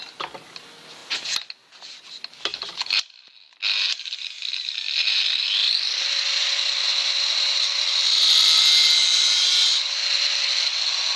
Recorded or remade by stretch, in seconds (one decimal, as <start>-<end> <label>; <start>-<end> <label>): 0.0-5.6 recorded; 5.6-7.8 remade; 7.8-9.0 recorded; 9.0-10.0 remade; 10.0-11.2 recorded